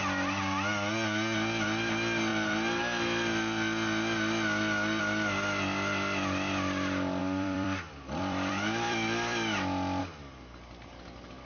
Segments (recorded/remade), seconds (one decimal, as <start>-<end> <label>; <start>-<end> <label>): 0.0-7.2 recorded; 7.2-10.0 remade; 10.0-11.4 recorded